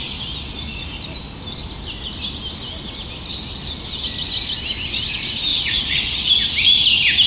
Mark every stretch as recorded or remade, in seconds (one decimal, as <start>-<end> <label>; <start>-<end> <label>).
0.0-5.5 recorded; 5.5-6.3 remade; 6.3-7.3 recorded